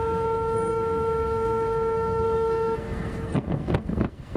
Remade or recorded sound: remade